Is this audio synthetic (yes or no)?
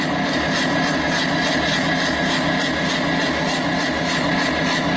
no